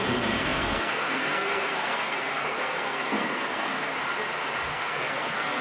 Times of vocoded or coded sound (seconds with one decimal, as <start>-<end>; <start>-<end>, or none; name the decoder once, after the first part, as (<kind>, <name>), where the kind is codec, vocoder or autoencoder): 0.0-3.9 (codec, SNAC); 4.7-5.6